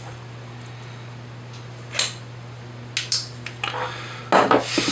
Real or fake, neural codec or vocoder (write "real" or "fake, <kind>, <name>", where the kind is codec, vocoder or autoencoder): real